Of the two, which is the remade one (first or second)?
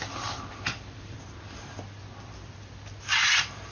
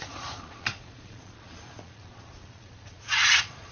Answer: second